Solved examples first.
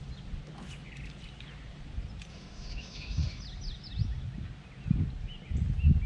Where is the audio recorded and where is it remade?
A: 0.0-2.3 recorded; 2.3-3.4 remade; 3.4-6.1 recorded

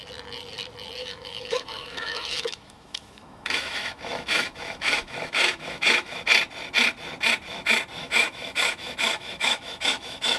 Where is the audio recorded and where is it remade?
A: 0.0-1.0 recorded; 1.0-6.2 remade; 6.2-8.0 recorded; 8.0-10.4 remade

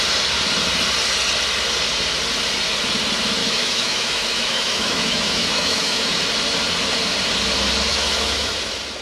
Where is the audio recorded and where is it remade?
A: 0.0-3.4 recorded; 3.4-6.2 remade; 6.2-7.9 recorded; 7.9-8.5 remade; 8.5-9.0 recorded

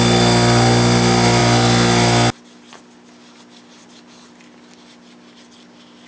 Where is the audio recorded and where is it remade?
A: 0.0-6.1 recorded

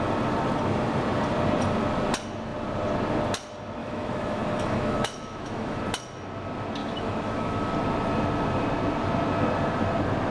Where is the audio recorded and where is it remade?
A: 0.0-3.8 recorded; 3.8-5.8 remade; 5.8-6.8 recorded; 6.8-7.7 remade; 7.7-10.3 recorded

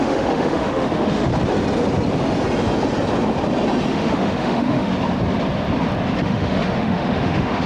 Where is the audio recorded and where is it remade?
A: 0.0-1.3 remade; 1.3-3.9 recorded; 3.9-4.9 remade; 4.9-6.2 recorded; 6.2-7.7 remade